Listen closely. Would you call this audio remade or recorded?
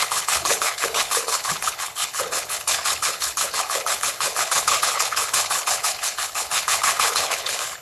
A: remade